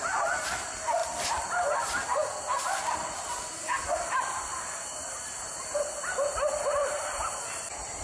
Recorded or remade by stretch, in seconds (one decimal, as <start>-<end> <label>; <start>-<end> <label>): 0.0-6.8 recorded; 6.8-7.4 remade; 7.4-8.0 recorded